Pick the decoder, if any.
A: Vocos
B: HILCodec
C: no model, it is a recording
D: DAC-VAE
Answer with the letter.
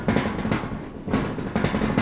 C